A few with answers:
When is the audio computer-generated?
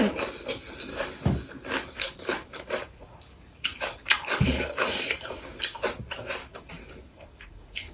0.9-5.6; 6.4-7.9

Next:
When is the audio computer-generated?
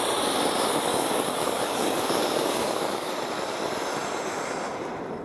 0.9-3.1